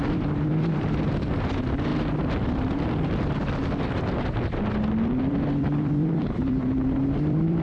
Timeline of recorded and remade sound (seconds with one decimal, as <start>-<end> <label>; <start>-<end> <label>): 0.0-1.9 remade; 1.9-2.8 recorded; 2.8-7.6 remade